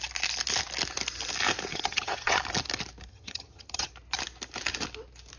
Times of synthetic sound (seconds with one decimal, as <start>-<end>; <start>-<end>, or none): 1.7-2.4; 3.1-3.9